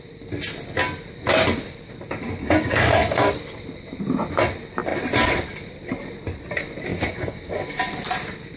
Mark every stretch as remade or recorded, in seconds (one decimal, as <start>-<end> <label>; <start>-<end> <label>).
0.0-2.4 recorded; 2.4-3.3 remade; 3.3-6.9 recorded; 6.9-7.5 remade; 7.5-8.6 recorded